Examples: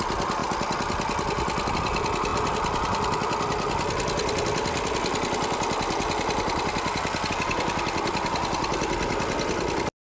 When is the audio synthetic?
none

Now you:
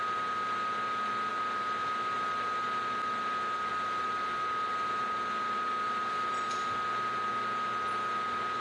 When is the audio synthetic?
none

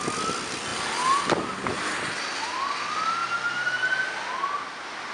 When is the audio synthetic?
none

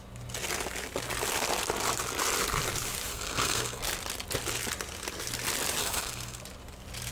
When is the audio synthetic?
3.1-3.8; 5.8-6.4